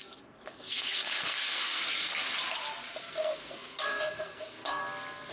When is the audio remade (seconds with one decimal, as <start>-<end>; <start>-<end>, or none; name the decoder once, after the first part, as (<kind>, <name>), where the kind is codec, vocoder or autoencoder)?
0.0-2.1 (codec, SNAC); 3.0-4.8